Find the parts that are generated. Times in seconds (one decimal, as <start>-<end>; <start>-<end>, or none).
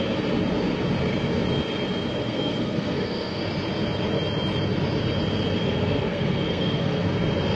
2.2-3.4; 5.6-7.1